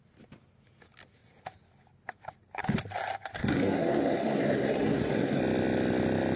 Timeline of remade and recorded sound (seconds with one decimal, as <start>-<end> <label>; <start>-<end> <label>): 0.0-3.4 recorded; 3.4-5.4 remade; 5.4-6.4 recorded